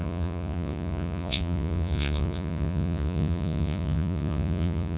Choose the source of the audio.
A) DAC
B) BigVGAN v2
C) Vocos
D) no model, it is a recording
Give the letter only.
C